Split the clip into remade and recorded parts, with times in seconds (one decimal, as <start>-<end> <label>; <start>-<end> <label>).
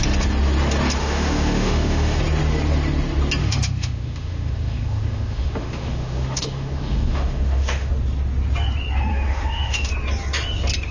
0.0-1.0 recorded; 1.0-2.2 remade; 2.2-3.4 recorded; 3.4-7.9 remade; 7.9-9.1 recorded; 9.1-9.9 remade; 9.9-10.9 recorded